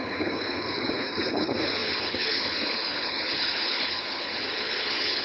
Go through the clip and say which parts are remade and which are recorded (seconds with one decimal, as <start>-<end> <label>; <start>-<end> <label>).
0.0-5.2 remade